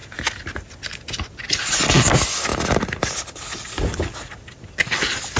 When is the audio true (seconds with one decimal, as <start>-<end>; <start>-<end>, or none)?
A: 0.0-5.4